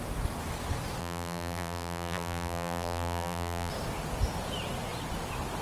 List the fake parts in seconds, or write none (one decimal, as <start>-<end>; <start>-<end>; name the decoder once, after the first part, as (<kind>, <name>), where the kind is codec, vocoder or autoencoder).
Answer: 1.0-3.7 (vocoder, BigVGAN v2)